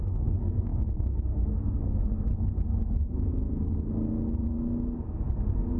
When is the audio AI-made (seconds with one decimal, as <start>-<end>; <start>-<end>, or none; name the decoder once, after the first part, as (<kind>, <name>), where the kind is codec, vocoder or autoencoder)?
0.0-2.3 (codec, SNAC)